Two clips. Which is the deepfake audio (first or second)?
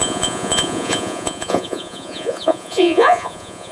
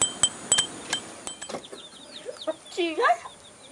first